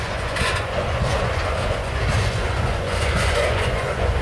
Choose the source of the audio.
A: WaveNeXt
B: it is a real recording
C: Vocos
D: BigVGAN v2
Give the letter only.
C